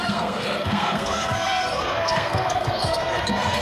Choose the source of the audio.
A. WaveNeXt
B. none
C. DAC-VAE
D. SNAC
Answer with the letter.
D